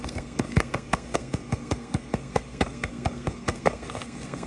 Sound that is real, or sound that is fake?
fake